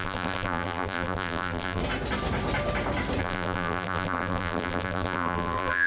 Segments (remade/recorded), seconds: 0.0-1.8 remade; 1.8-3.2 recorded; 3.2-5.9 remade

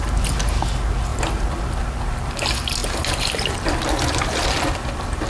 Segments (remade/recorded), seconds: 0.0-1.1 recorded; 1.1-1.8 remade; 1.8-2.8 recorded; 2.8-3.8 remade; 3.8-5.3 recorded

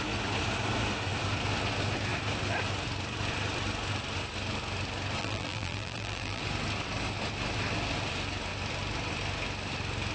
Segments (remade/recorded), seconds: 0.0-5.2 recorded; 5.2-6.4 remade; 6.4-10.1 recorded

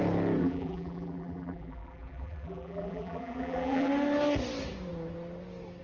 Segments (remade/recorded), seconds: 0.0-0.4 recorded; 0.4-3.9 remade; 3.9-5.8 recorded

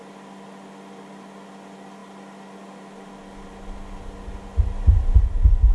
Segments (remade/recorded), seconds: 0.0-5.7 recorded